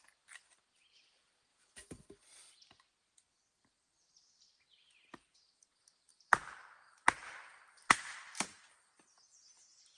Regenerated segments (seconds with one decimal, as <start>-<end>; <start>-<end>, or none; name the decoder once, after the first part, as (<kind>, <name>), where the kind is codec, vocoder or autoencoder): 1.5-2.0 (vocoder, Vocos)

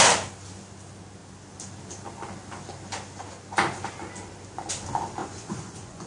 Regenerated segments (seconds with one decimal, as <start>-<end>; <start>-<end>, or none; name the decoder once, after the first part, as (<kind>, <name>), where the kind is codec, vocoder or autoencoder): 5.2-6.1 (vocoder, Vocos)

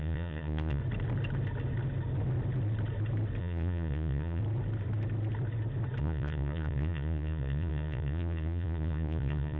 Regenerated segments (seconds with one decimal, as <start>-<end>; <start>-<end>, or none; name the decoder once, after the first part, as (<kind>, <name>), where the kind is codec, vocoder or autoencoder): 0.0-0.8 (vocoder, Vocos); 3.4-4.4; 6.0-9.6